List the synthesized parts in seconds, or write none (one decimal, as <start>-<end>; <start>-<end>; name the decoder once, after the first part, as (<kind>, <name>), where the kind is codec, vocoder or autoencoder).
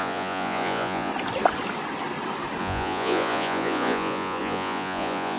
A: 0.0-1.1 (vocoder, Vocos); 2.6-5.4